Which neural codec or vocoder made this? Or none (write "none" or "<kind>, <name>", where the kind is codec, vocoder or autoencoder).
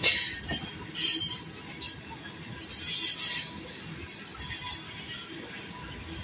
none